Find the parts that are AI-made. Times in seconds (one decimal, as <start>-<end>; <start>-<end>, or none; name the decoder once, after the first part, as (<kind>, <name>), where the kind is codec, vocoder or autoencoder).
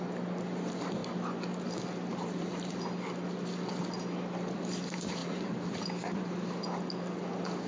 2.1-2.7 (vocoder, BigVGAN v2); 5.2-6.2